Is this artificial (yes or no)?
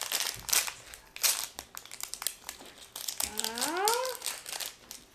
no